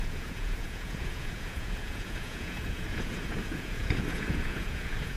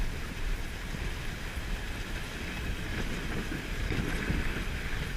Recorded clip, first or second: second